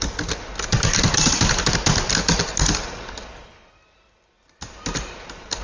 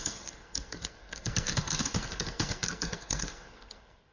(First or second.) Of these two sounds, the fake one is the second